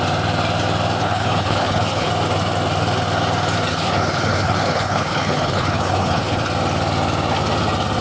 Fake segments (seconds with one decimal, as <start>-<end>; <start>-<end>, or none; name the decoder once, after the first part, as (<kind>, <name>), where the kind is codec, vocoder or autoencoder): 1.0-2.1 (codec, HILCodec); 3.7-6.4